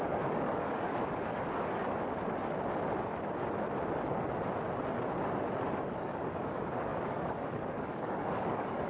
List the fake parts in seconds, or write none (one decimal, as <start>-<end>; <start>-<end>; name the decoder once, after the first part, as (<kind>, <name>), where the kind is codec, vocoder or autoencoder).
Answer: 0.0-1.8 (codec, DAC); 5.7-8.9